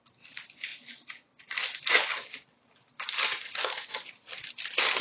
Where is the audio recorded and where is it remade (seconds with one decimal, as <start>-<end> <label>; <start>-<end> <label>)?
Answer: 0.0-5.0 recorded